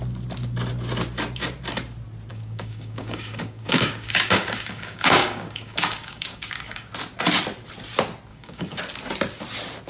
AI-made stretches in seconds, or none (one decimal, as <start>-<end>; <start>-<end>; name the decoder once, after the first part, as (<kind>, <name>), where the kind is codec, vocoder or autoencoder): 2.3-6.9 (codec, DAC); 8.3-8.8